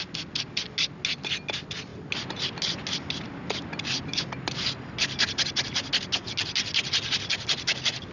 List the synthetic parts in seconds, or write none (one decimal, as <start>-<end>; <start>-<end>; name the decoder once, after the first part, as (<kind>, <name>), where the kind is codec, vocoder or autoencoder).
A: none